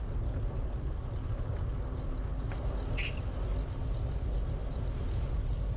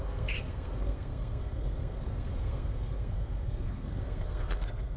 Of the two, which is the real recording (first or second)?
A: first